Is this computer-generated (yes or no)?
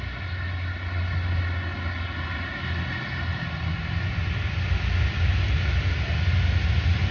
no